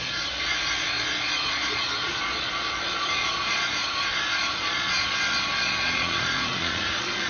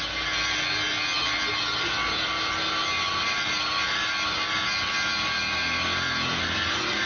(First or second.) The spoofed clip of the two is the first